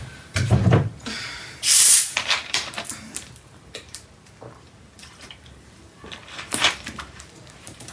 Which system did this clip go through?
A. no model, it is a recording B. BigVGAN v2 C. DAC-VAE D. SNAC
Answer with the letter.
B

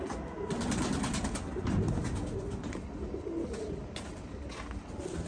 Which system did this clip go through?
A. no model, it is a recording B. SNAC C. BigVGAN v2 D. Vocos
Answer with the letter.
A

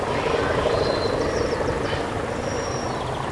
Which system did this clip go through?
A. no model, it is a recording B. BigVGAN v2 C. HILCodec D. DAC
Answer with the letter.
A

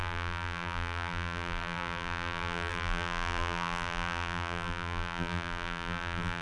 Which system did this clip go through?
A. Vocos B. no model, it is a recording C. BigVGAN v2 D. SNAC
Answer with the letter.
C